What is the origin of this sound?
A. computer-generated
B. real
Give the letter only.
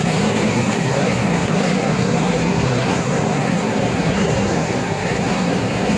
A